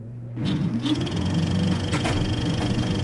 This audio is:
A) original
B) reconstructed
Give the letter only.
B